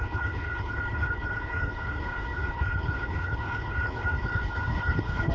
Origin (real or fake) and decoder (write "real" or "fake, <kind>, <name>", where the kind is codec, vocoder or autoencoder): fake, codec, HILCodec